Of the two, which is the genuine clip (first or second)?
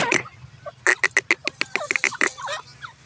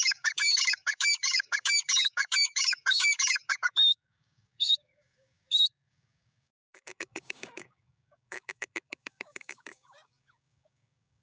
first